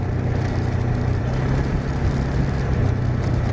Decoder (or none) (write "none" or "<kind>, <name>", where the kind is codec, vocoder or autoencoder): none